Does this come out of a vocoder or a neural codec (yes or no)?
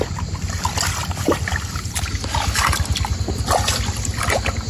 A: no